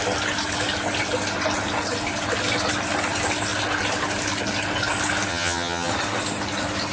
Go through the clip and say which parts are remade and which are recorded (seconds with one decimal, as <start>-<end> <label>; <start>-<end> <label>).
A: 0.0-5.3 recorded; 5.3-5.9 remade; 5.9-6.9 recorded